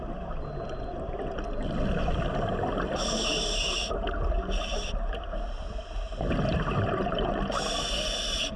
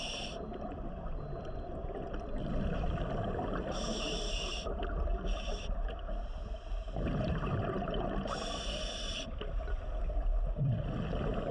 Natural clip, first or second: first